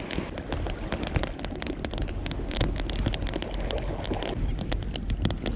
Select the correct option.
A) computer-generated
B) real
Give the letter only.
B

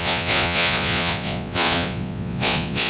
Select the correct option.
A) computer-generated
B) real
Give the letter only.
A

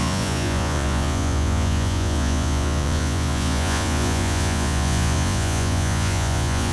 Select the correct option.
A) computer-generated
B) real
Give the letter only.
A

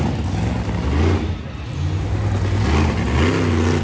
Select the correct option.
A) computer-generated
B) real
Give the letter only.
B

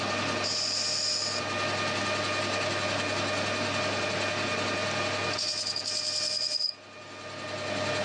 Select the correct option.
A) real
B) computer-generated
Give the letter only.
A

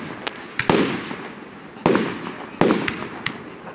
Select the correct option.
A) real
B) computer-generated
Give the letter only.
A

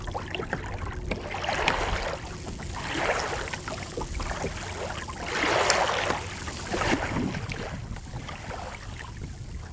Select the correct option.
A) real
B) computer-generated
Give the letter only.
A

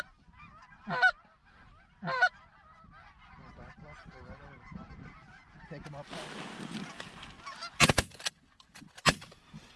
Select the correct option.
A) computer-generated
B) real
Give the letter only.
B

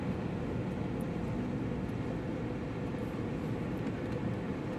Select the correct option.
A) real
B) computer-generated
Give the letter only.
A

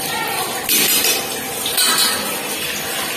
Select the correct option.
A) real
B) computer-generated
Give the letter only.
A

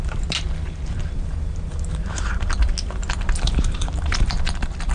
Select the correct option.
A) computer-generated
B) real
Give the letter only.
B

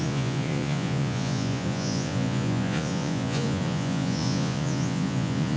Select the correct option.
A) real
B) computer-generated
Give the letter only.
B